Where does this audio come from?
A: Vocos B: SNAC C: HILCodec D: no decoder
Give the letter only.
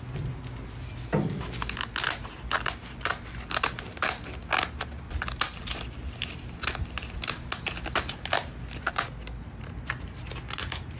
D